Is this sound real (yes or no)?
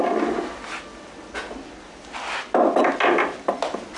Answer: yes